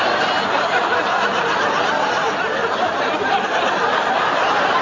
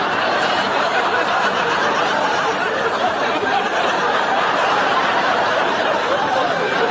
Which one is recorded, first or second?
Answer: first